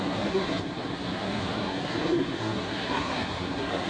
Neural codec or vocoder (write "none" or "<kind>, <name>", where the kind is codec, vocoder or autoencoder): codec, SNAC